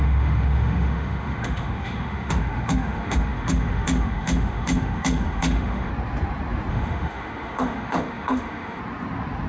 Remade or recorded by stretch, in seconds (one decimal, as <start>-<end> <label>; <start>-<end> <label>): 0.0-5.9 remade; 5.9-6.7 recorded; 6.7-8.8 remade; 8.8-9.5 recorded